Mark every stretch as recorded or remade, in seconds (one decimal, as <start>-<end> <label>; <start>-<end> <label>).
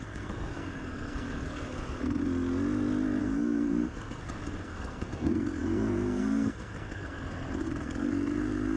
0.0-2.2 remade; 2.2-3.2 recorded; 3.2-8.8 remade